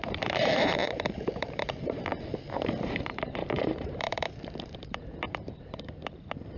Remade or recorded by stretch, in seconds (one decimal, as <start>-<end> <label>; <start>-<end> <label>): 0.0-6.6 remade